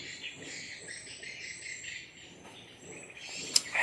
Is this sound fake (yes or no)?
no